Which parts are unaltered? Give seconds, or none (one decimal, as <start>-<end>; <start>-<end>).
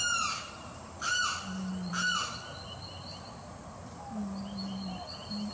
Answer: 1.9-5.1